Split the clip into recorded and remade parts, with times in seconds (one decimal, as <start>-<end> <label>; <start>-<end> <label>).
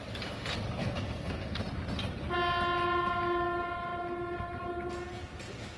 0.0-0.8 recorded; 0.8-1.6 remade; 1.6-5.8 recorded